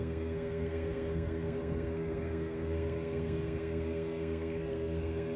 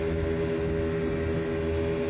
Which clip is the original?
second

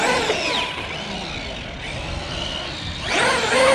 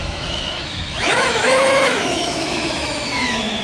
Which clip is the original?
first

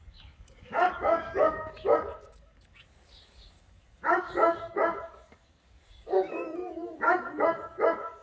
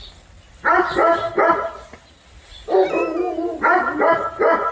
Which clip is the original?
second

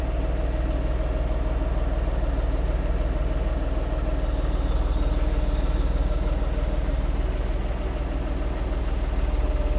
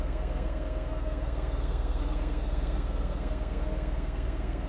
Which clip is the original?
first